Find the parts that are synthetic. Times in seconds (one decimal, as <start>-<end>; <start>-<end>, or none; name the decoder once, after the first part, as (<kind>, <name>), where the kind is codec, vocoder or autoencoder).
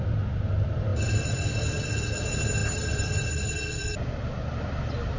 0.9-1.6 (vocoder, BigVGAN v2); 2.6-4.2